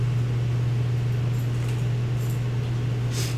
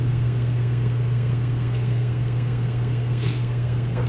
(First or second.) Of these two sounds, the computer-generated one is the second